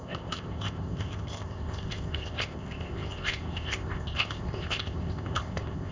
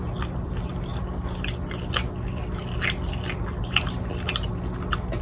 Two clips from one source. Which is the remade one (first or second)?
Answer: first